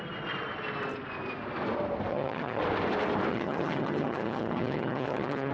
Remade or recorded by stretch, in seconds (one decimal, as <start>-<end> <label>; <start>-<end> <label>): 0.0-2.1 recorded; 2.1-2.6 remade; 2.6-3.3 recorded; 3.3-5.5 remade